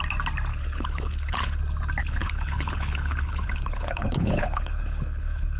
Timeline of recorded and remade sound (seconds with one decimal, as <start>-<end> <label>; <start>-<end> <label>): 0.0-0.5 recorded; 0.5-1.6 remade; 1.6-2.0 recorded; 2.0-5.6 remade